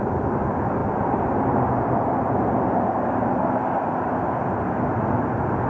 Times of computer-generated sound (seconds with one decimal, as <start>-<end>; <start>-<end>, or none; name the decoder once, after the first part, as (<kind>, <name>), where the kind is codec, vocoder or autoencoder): none